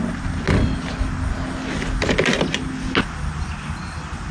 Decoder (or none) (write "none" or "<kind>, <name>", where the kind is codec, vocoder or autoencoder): none